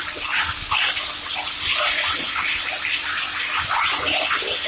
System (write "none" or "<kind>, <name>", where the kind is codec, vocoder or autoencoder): none